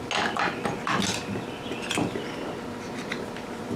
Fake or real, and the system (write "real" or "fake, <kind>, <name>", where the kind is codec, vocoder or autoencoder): real